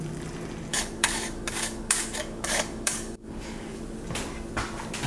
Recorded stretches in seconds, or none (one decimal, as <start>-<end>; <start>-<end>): 0.0-0.7; 3.8-5.1